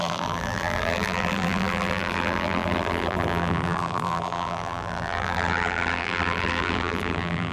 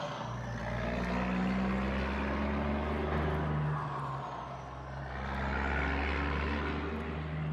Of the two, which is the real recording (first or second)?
second